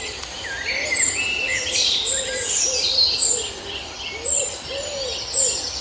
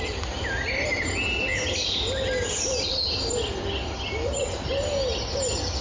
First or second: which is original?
second